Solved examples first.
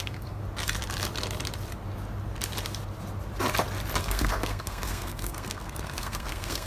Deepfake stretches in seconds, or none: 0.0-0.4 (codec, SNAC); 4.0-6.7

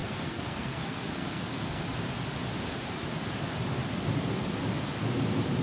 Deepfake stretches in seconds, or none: 0.0-1.8 (codec, SNAC)

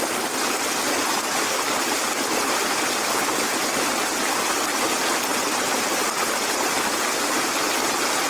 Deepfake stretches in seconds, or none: none